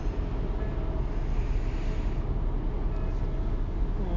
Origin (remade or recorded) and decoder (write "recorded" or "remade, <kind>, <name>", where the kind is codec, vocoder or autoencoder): recorded